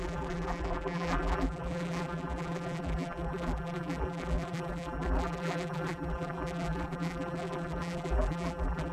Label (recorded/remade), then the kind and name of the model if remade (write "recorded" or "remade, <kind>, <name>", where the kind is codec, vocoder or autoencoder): remade, vocoder, BigVGAN v2